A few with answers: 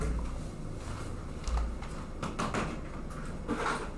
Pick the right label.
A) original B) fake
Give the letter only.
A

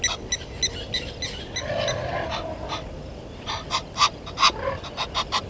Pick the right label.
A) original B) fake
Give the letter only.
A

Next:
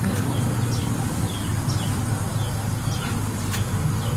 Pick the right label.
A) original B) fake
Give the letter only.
A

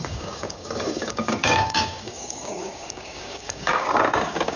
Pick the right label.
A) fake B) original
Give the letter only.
A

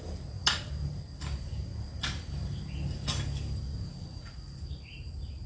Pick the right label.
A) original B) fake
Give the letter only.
A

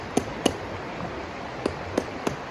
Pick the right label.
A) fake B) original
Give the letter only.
B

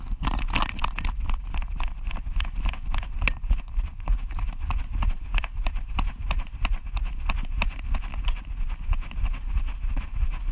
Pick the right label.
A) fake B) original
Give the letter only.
B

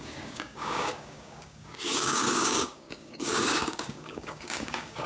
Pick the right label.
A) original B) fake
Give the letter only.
B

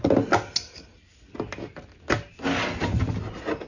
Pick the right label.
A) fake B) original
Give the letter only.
B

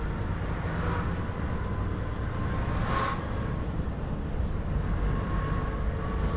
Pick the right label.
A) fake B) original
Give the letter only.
B